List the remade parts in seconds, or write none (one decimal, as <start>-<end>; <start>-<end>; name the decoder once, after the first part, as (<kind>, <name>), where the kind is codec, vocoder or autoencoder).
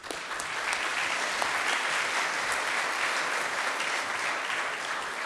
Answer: none